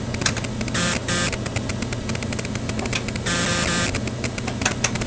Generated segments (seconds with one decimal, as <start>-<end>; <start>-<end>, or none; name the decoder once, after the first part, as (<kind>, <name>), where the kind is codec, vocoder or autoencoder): none